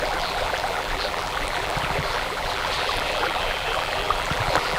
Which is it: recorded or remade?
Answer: remade